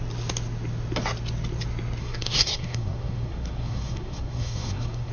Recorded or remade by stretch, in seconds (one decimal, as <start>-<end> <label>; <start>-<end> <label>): 0.0-2.0 recorded; 2.0-5.1 remade